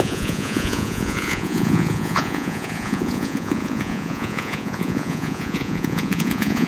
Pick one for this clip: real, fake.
fake